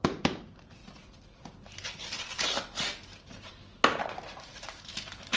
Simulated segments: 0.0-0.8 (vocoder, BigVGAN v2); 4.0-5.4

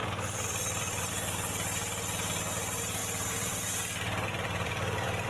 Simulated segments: 0.0-1.1 (vocoder, BigVGAN v2); 3.0-5.3

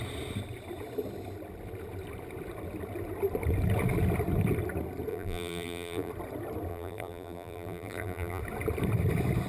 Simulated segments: 5.1-6.1 (vocoder, BigVGAN v2); 6.7-8.4

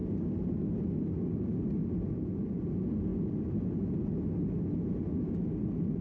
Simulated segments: 1.8-2.6 (vocoder, BigVGAN v2); 3.1-5.3

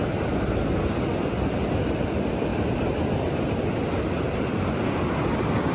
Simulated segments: 2.5-3.3 (vocoder, BigVGAN v2)

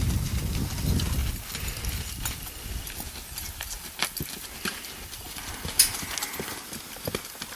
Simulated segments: none

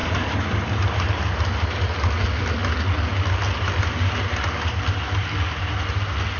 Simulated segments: 0.0-1.2 (vocoder, BigVGAN v2)